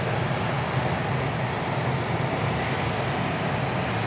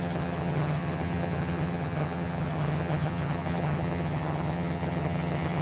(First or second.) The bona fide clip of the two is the first